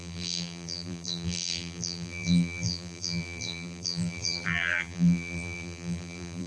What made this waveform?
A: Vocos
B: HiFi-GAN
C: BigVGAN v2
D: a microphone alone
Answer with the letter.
C